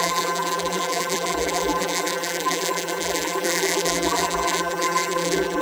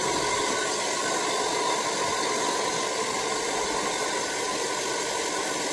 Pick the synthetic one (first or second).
first